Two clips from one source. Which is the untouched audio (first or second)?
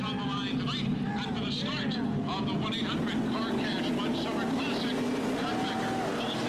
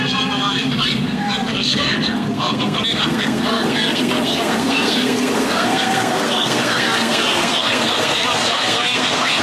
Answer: first